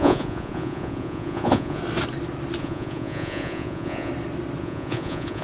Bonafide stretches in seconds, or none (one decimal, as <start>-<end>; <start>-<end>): 1.8-2.6; 4.1-4.6